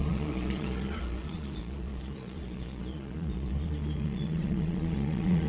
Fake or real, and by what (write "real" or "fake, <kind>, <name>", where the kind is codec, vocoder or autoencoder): fake, vocoder, Vocos